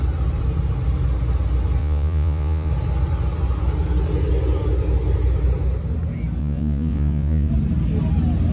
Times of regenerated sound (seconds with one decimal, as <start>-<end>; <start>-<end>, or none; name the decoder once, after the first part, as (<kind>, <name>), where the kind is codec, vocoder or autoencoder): 1.8-2.7 (vocoder, Vocos); 6.4-7.5